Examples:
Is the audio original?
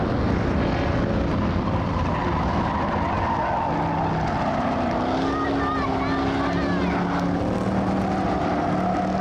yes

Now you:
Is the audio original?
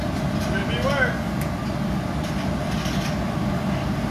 yes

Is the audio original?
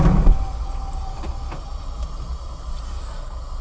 yes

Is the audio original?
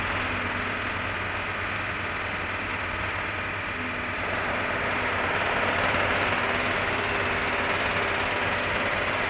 yes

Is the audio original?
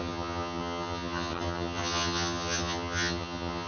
no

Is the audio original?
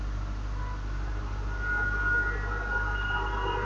yes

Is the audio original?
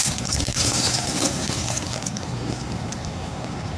no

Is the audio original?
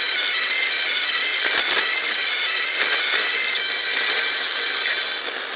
yes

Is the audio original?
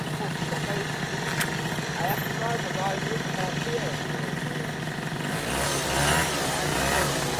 yes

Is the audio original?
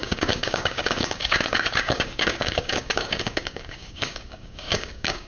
no